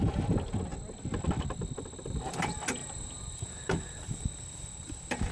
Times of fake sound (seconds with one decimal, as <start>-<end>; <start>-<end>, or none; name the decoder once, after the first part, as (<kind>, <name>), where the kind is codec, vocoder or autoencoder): 2.8-5.3 (vocoder, BigVGAN v2)